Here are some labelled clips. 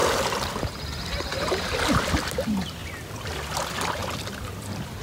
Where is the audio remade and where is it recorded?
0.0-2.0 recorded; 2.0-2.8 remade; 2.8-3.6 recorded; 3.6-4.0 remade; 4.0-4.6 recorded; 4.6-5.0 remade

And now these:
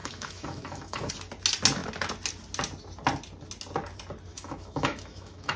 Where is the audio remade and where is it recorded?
0.0-1.1 remade; 1.1-4.3 recorded; 4.3-5.6 remade

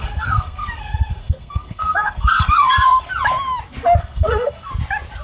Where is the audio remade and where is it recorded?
0.0-3.1 remade; 3.1-4.0 recorded; 4.0-4.7 remade; 4.7-5.2 recorded

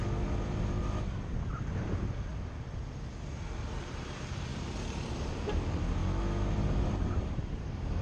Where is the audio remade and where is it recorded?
0.0-1.8 recorded; 1.8-2.3 remade; 2.3-3.8 recorded; 3.8-6.0 remade; 6.0-6.5 recorded; 6.5-8.0 remade

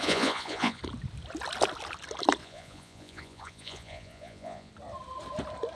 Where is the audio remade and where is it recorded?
0.0-0.8 remade; 0.8-2.4 recorded; 2.4-4.7 remade; 4.7-5.8 recorded

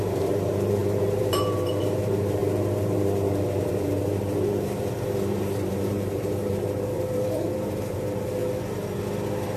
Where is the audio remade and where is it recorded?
0.0-8.4 remade; 8.4-9.6 recorded

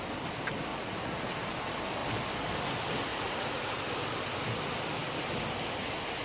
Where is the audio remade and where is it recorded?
0.0-0.7 recorded; 0.7-1.3 remade; 1.3-3.1 recorded; 3.1-3.8 remade; 3.8-6.2 recorded

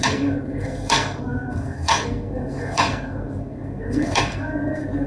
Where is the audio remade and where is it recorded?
0.0-5.1 remade